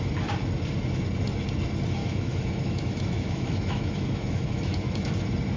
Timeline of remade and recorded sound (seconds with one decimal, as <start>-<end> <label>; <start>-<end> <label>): 0.0-2.0 recorded; 2.0-5.1 remade; 5.1-5.6 recorded